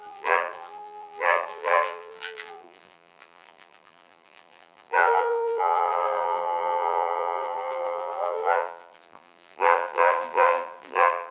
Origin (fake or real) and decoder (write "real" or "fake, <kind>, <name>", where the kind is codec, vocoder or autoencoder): fake, vocoder, BigVGAN v2